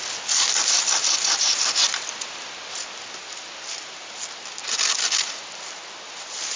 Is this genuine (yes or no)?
yes